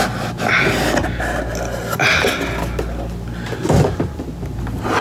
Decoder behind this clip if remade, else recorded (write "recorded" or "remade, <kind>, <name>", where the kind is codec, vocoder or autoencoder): recorded